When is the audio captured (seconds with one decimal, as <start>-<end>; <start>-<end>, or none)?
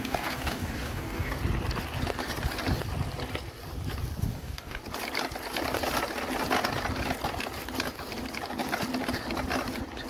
1.4-4.2; 4.8-10.1